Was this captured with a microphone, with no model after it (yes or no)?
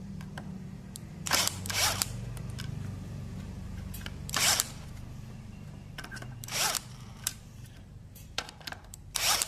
no